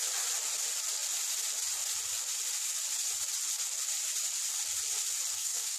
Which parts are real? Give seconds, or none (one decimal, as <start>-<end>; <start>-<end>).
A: 0.0-5.3